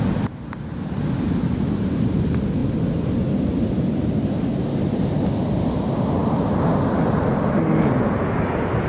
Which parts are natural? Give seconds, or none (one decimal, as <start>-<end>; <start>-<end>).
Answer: 0.0-8.9